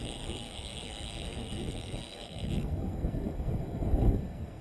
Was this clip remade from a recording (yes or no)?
yes